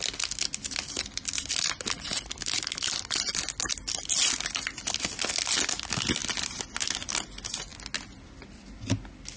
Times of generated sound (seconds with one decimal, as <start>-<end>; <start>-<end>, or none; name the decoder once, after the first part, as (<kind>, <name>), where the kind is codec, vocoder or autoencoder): none